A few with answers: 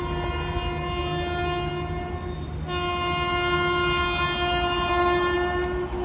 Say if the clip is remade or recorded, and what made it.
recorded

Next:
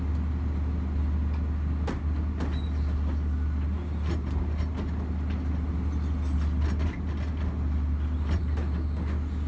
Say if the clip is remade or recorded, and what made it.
recorded